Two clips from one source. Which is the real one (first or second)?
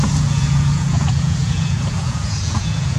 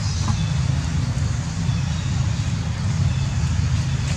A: second